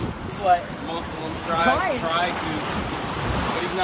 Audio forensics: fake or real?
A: real